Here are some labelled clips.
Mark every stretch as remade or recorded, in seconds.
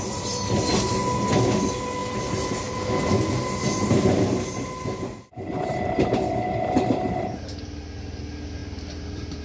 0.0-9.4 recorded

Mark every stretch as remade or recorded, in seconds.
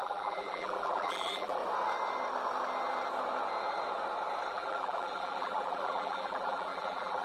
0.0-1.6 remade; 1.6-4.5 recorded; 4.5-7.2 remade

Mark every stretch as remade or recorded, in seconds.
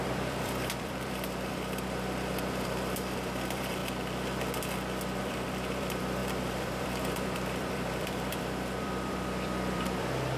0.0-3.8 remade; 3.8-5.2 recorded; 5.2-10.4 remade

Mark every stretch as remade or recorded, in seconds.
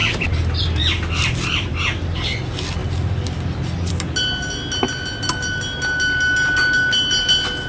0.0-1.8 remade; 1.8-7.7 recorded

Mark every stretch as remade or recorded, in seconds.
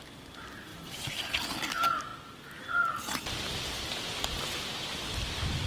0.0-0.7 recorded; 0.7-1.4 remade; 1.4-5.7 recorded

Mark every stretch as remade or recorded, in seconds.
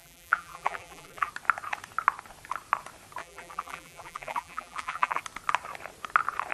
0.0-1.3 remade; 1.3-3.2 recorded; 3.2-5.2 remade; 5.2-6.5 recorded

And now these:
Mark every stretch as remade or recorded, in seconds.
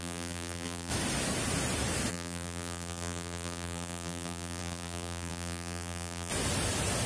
0.0-0.9 remade; 0.9-2.1 recorded; 2.1-6.3 remade; 6.3-7.1 recorded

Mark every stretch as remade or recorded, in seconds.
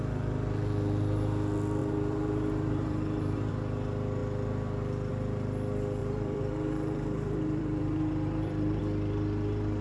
0.0-1.8 recorded; 1.8-3.5 remade; 3.5-6.0 recorded; 6.0-8.8 remade; 8.8-9.8 recorded